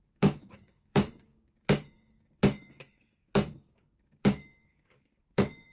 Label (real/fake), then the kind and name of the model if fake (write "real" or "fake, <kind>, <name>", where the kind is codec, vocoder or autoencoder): fake, codec, DAC